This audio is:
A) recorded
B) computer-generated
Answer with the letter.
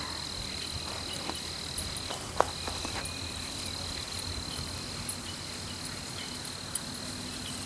A